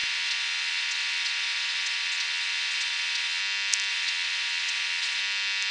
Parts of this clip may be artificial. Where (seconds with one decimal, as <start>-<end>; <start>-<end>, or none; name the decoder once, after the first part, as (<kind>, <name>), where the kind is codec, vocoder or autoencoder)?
0.0-3.4 (vocoder, Vocos); 3.9-5.2

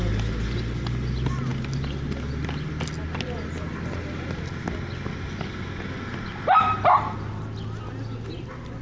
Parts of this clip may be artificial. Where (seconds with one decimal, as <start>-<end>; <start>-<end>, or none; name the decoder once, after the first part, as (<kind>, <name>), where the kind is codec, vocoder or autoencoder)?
none

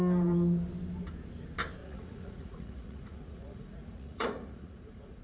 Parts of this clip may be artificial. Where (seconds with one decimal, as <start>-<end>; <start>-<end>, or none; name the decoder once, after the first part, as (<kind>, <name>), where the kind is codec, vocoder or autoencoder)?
1.8-5.2 (vocoder, Vocos)

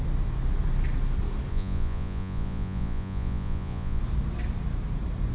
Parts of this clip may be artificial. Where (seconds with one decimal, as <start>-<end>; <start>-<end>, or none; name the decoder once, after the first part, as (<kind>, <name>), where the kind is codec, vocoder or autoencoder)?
1.5-4.0 (vocoder, Vocos)

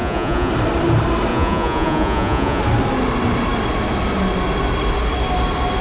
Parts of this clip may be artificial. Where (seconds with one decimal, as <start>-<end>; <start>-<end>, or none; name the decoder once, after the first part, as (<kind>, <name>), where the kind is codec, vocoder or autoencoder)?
0.0-0.5 (vocoder, Vocos); 1.3-2.6